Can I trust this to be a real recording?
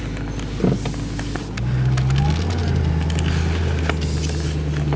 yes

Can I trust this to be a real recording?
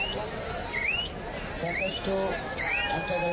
yes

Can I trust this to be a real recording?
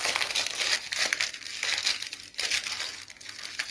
yes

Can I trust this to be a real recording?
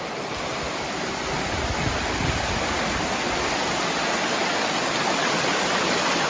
yes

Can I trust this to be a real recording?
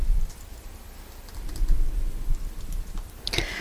yes